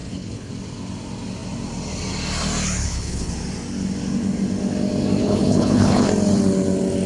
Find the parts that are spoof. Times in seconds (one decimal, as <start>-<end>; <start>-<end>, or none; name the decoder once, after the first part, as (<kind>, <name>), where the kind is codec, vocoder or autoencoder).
0.0-0.5 (codec, HILCodec); 2.8-3.3; 5.2-6.1